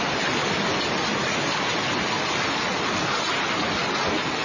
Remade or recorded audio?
recorded